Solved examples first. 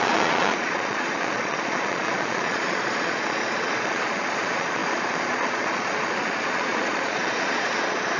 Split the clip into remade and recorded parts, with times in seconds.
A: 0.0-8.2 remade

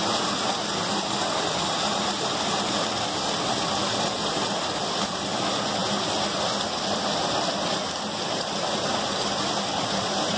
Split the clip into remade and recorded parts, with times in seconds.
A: 0.0-10.4 recorded

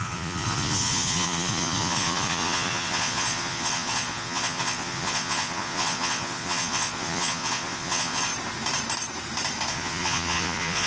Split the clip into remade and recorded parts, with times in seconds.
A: 0.0-8.3 remade; 8.3-9.7 recorded; 9.7-10.9 remade

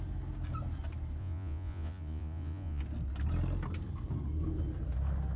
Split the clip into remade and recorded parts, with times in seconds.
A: 0.0-1.2 recorded; 1.2-2.8 remade; 2.8-5.4 recorded

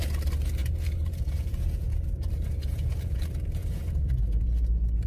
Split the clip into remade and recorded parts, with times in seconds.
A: 0.0-0.6 recorded; 0.6-3.2 remade; 3.2-3.6 recorded; 3.6-4.4 remade; 4.4-5.1 recorded